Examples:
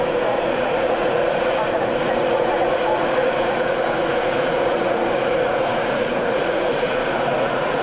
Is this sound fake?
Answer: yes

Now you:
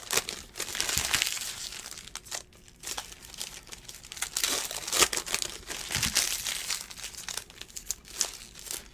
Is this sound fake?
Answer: no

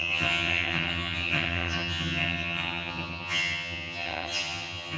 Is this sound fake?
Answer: yes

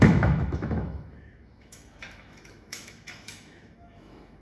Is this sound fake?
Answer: yes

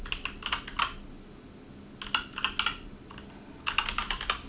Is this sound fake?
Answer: no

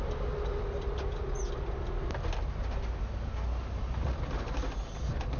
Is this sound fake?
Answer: no